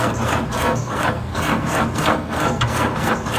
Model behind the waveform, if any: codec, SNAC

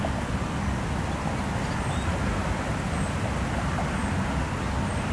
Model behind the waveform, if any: none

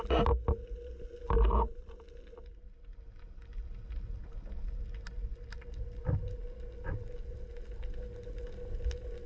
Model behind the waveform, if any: none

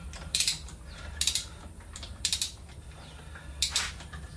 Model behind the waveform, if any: none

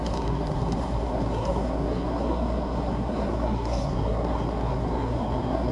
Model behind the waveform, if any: codec, SNAC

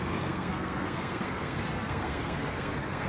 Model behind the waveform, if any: codec, SNAC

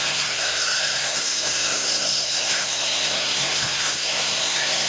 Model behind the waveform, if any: codec, SNAC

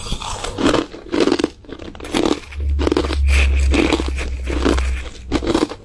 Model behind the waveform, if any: none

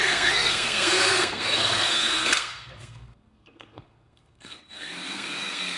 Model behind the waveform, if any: codec, SNAC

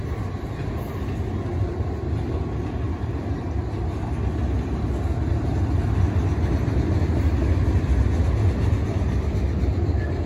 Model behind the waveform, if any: none